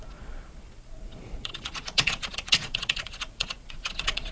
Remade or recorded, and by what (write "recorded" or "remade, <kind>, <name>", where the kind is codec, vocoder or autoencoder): remade, vocoder, Vocos